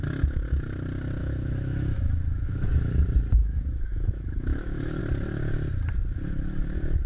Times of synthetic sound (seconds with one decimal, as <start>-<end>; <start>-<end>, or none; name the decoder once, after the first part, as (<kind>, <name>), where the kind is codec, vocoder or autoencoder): 1.2-2.9 (autoencoder, DAC-VAE); 3.4-5.0